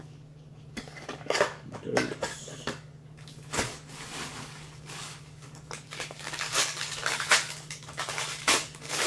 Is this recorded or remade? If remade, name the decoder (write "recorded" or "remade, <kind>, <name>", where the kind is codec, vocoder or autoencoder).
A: remade, codec, DAC